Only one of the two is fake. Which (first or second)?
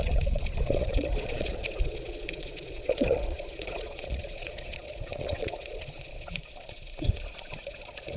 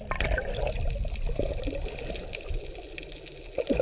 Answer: first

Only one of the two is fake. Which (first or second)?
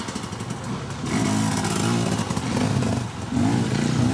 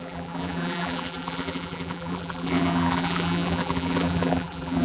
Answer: second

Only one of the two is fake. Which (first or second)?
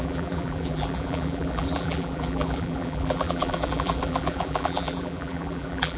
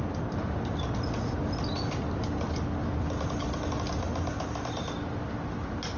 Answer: first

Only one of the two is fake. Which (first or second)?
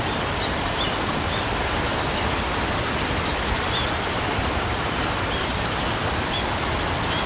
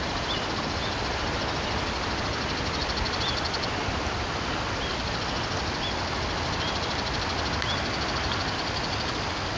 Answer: first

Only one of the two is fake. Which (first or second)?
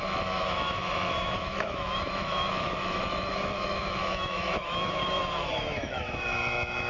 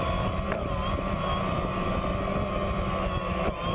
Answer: first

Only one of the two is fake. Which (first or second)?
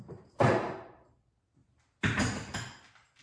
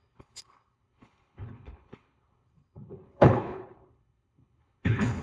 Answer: second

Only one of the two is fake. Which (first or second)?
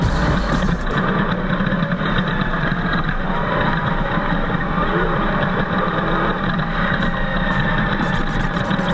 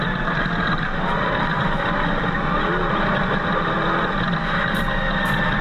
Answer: first